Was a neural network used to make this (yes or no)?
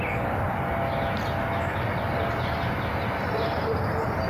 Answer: no